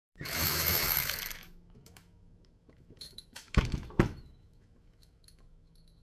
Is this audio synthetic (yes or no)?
yes